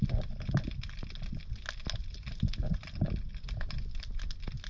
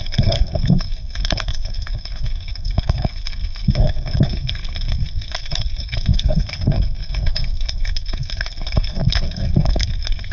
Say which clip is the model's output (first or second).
second